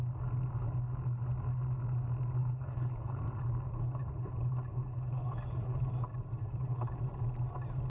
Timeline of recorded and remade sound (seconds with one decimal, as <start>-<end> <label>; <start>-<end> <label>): 0.0-2.4 recorded; 2.4-3.2 remade; 3.2-4.0 recorded; 4.0-5.9 remade; 5.9-6.4 recorded; 6.4-7.0 remade; 7.0-7.9 recorded